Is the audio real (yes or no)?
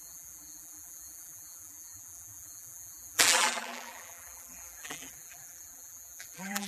no